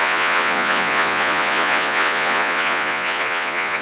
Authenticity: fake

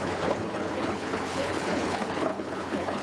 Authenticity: fake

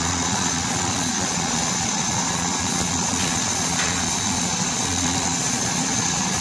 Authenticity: fake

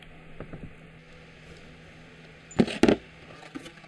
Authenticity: real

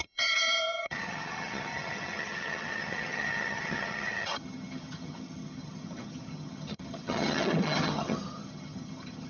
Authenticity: fake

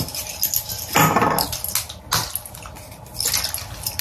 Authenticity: real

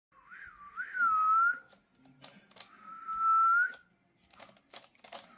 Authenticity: real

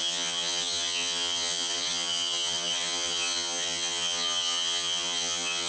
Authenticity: fake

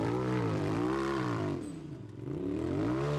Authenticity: fake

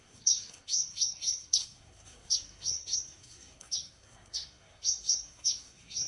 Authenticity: fake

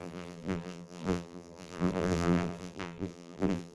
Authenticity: fake